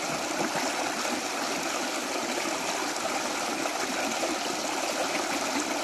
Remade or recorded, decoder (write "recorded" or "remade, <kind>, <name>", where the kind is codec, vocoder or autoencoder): recorded